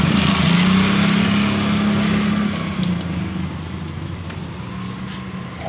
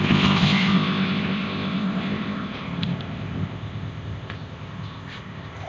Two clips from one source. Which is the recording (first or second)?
first